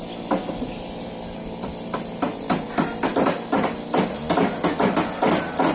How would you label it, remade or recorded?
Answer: recorded